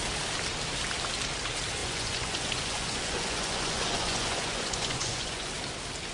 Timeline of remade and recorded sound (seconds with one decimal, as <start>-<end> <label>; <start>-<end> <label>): 0.0-1.8 recorded; 1.8-5.5 remade; 5.5-6.1 recorded